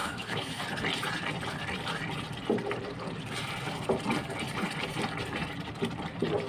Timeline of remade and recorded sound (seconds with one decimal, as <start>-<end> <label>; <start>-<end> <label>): 0.0-0.6 remade; 0.6-6.5 recorded